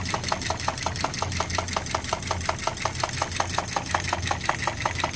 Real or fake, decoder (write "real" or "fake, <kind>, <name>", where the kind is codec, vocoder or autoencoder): real